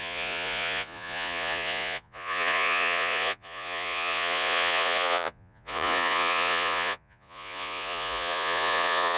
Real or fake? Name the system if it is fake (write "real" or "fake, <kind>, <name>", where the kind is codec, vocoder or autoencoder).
fake, vocoder, Vocos